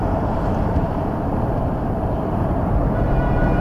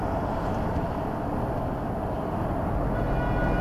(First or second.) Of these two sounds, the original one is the second